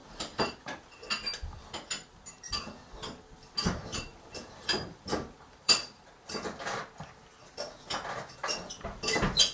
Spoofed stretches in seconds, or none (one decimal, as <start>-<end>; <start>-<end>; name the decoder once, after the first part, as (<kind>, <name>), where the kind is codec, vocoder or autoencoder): 0.0-1.1 (vocoder, BigVGAN v2); 3.9-6.1